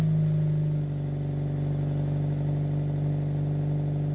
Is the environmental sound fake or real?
real